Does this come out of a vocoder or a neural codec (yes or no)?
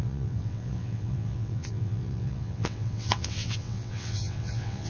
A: yes